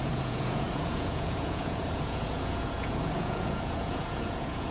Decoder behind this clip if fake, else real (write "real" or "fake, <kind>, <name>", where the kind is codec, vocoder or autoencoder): fake, vocoder, Vocos